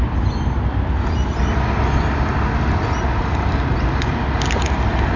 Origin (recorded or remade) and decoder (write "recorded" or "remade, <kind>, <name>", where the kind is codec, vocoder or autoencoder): recorded